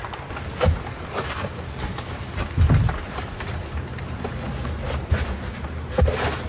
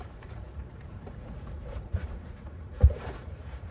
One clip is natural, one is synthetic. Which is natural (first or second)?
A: first